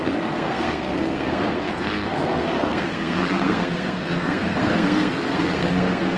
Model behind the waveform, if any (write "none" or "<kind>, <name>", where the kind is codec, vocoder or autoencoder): codec, SNAC